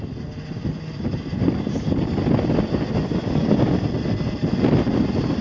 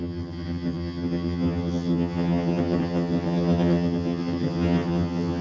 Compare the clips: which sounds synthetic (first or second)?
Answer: second